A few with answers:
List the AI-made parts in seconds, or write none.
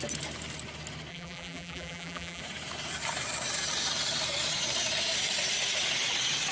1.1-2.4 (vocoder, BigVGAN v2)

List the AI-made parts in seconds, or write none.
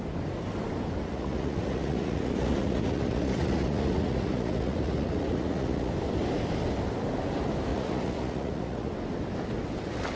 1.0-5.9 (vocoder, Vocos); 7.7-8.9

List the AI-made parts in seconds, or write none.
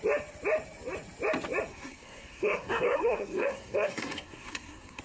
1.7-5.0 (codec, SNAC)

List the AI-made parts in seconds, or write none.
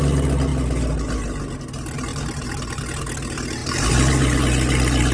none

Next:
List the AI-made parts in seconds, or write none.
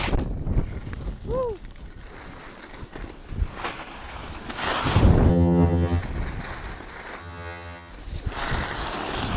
5.3-6.0 (vocoder, HiFi-GAN); 7.2-7.9